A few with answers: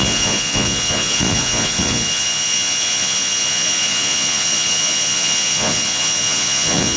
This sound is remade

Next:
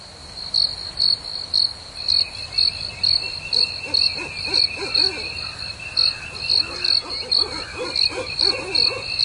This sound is recorded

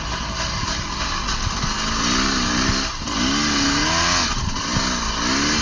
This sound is recorded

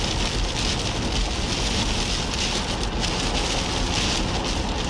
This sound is recorded